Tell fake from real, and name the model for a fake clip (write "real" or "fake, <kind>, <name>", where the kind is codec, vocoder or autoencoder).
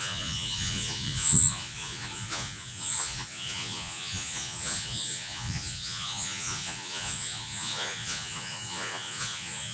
fake, vocoder, Vocos